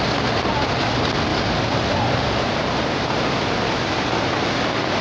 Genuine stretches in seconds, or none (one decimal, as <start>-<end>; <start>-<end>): 0.0-1.3; 4.3-5.0